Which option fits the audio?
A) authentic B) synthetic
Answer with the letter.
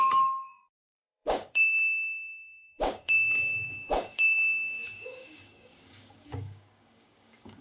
B